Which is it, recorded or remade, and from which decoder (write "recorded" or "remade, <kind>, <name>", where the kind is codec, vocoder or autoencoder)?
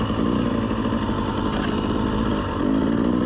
recorded